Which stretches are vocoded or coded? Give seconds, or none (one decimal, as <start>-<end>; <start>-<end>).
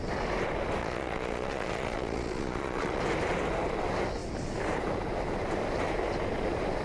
0.8-3.0